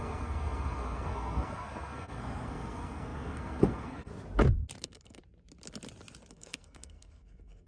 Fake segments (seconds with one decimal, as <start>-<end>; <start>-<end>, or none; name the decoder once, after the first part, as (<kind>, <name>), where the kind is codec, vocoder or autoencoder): 0.0-4.1 (codec, SNAC); 4.8-5.2; 6.3-7.7